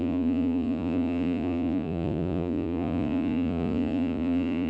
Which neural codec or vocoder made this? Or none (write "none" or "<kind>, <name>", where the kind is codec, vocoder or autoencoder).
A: vocoder, Vocos